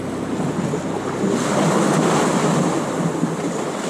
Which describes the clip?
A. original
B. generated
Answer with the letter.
A